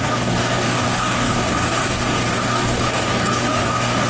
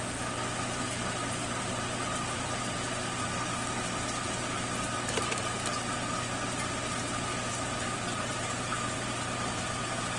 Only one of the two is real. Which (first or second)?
second